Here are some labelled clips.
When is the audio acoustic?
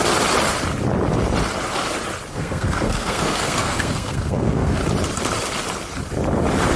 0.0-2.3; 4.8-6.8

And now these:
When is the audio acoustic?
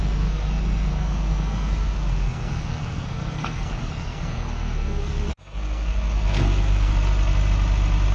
6.9-8.1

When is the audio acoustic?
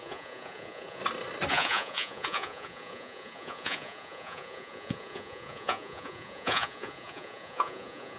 1.0-1.5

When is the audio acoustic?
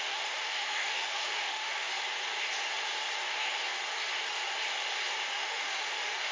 1.9-5.3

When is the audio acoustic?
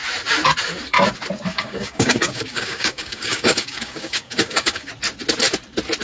0.0-1.5; 4.9-6.0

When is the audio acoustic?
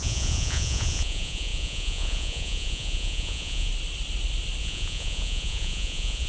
3.7-4.6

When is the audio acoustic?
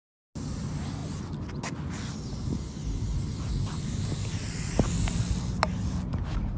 0.0-6.6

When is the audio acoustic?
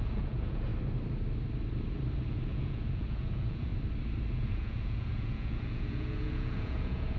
0.7-2.3; 3.7-4.3